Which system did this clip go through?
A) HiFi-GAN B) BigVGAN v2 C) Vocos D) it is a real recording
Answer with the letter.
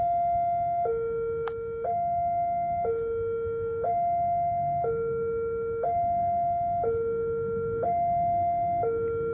D